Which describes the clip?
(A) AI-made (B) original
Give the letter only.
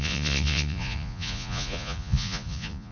A